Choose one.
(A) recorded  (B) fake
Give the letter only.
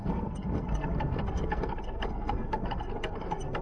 B